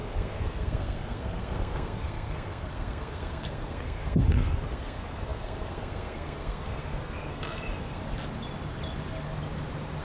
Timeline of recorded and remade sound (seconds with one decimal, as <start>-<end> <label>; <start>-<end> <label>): 0.0-8.0 remade; 8.0-10.0 recorded